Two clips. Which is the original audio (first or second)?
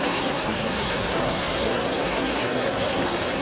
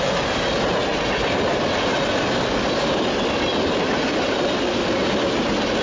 second